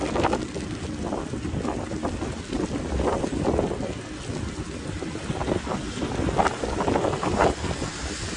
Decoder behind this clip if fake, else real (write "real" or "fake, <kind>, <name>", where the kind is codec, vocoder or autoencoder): real